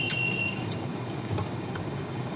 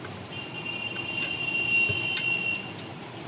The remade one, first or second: first